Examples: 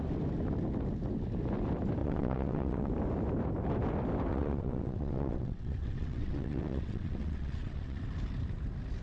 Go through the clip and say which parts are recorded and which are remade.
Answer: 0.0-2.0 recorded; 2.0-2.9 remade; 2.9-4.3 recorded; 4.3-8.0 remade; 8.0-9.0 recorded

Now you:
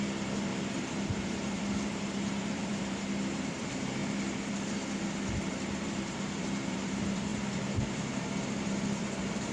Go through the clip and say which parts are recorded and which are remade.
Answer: 0.0-0.5 remade; 0.5-1.1 recorded; 1.1-4.0 remade; 4.0-5.5 recorded; 5.5-9.5 remade

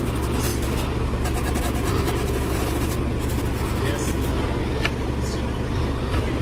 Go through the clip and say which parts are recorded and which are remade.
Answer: 0.0-6.4 recorded